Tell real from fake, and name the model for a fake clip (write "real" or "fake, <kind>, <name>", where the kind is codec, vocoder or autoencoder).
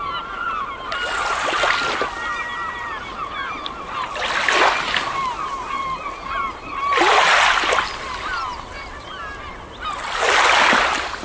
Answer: real